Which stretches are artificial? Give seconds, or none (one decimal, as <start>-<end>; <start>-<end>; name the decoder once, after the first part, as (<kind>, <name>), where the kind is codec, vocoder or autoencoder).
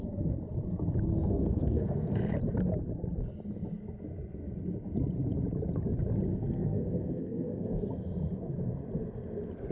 1.1-2.2 (codec, SNAC); 6.3-7.9